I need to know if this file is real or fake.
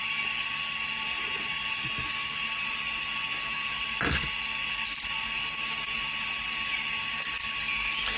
real